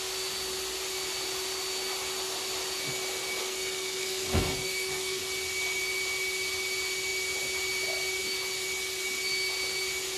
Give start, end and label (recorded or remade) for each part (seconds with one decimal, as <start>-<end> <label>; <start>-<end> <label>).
0.0-3.4 recorded; 3.4-5.2 remade; 5.2-10.2 recorded